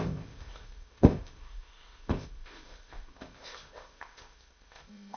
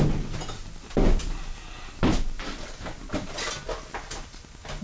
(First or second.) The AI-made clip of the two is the first